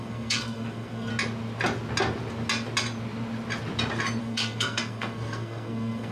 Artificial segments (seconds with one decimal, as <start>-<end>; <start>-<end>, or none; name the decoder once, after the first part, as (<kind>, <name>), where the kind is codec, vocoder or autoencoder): 0.0-1.1 (codec, SNAC); 4.2-6.1